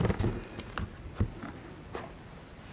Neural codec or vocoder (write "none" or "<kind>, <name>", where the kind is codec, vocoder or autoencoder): none